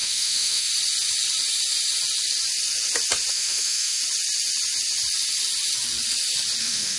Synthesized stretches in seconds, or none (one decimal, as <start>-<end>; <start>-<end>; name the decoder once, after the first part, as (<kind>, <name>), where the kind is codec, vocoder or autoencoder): 0.0-0.7 (autoencoder, DAC-VAE); 3.3-4.0; 6.6-7.0